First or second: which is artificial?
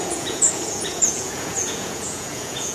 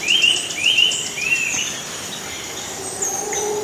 first